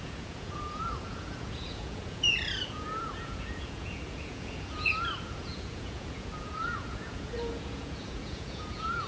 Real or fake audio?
fake